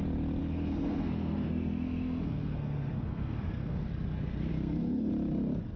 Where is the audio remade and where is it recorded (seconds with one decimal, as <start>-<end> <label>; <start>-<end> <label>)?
0.0-0.4 recorded; 0.4-3.9 remade; 3.9-4.5 recorded; 4.5-5.1 remade; 5.1-5.8 recorded